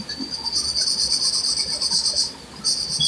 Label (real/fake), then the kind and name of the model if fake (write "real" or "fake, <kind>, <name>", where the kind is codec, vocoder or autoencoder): fake, vocoder, BigVGAN v2